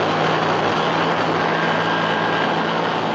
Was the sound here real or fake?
real